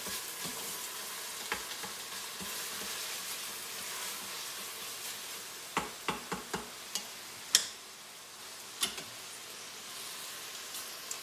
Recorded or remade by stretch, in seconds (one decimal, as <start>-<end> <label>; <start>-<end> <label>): 0.0-11.2 recorded

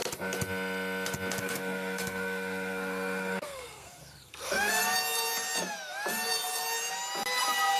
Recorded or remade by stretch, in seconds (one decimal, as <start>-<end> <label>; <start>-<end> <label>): 0.0-1.4 recorded; 1.4-4.8 remade; 4.8-7.8 recorded

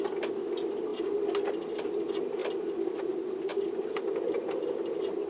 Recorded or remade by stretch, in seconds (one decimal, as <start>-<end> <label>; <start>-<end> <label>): 0.0-5.3 recorded

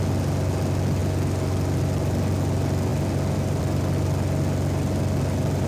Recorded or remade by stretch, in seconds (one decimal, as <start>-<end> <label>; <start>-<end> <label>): 0.0-5.7 recorded

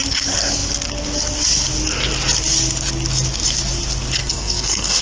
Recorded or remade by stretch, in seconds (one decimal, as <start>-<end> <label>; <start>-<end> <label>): 0.0-4.2 recorded; 4.2-5.0 remade

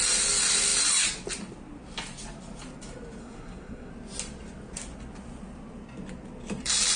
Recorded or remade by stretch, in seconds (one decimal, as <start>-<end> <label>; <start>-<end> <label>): 0.0-3.2 recorded; 3.2-3.9 remade; 3.9-7.0 recorded

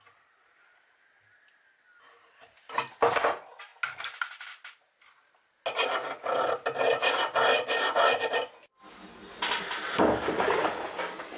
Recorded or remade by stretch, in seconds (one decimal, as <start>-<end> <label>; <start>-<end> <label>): 0.0-11.4 recorded

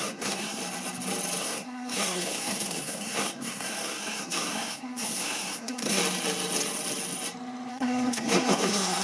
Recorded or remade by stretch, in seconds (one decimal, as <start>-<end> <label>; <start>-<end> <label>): 0.0-0.6 remade; 0.6-1.4 recorded; 1.4-6.0 remade; 6.0-7.7 recorded; 7.7-9.0 remade